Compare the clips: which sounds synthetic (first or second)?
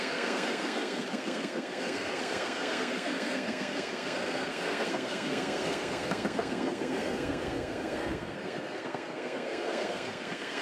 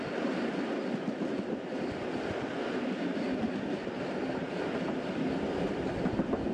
first